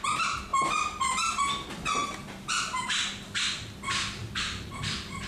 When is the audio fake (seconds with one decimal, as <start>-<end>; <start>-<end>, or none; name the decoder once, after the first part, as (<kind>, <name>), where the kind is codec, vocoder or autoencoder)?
0.5-1.4 (vocoder, BigVGAN v2); 2.0-3.1; 4.2-4.7